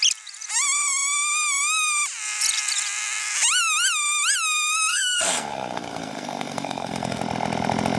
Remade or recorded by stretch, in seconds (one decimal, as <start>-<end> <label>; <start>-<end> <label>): 0.0-4.9 recorded; 4.9-7.2 remade; 7.2-8.0 recorded